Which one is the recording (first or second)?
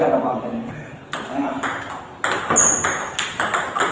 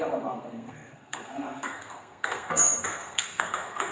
first